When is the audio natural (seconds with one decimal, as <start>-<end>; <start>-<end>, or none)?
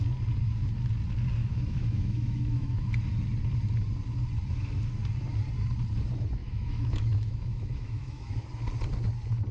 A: 0.0-1.4; 2.9-6.4; 8.4-9.5